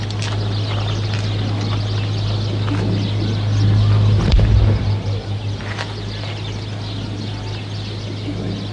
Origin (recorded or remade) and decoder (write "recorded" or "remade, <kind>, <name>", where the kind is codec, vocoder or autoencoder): recorded